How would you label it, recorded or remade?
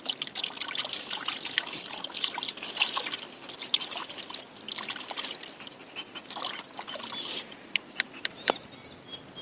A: recorded